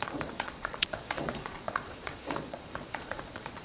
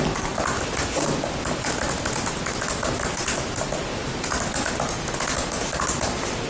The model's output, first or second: first